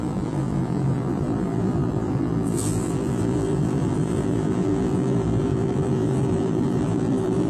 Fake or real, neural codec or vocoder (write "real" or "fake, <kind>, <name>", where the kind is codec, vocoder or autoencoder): fake, vocoder, BigVGAN v2